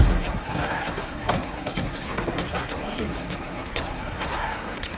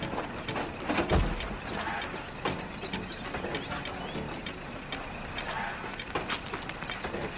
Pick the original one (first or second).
second